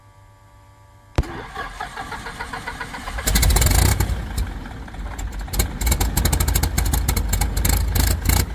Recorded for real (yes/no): yes